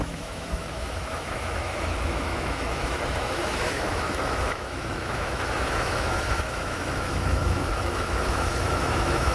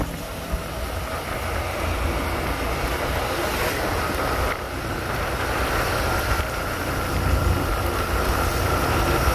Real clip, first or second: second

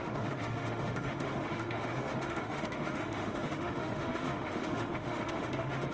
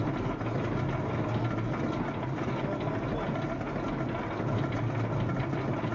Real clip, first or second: second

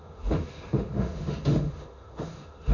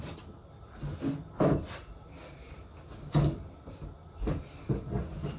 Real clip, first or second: second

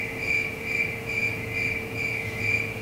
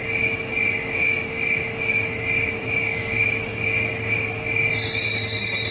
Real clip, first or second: second